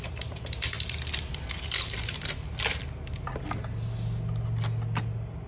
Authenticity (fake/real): real